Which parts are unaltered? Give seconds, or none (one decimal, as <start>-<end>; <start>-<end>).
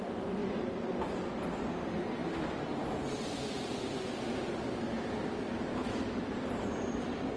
0.0-0.4; 0.9-2.2; 6.6-7.4